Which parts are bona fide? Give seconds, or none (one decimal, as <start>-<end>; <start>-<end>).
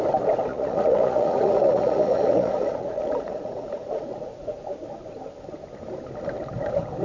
0.0-0.5; 4.7-7.0